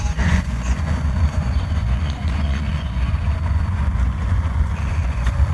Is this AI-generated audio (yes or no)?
yes